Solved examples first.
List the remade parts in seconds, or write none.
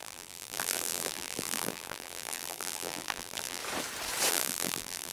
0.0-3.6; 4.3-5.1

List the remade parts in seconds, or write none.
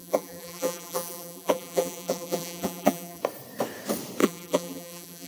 0.0-3.2; 4.2-5.3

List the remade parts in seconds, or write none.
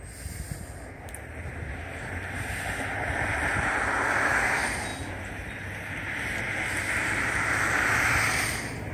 7.0-7.6